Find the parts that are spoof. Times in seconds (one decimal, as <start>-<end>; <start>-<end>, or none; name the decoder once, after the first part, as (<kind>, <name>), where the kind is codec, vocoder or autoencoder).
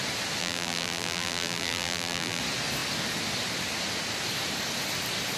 0.4-2.4 (vocoder, BigVGAN v2)